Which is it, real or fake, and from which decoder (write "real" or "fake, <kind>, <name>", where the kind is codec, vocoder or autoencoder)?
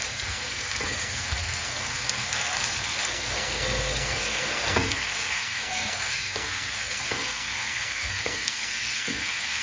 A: fake, codec, SNAC